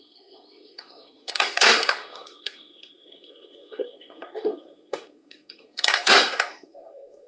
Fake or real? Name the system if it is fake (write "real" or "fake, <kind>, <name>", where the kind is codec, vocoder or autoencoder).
fake, codec, SNAC